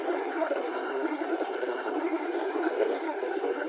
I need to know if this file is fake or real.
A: fake